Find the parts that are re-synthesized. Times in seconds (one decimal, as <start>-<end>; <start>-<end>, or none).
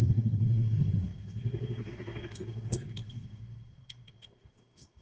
0.0-5.0